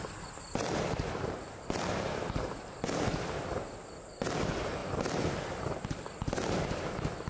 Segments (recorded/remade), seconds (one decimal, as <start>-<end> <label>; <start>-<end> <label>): 0.0-7.3 recorded